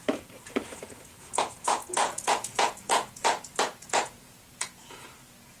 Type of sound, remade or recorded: remade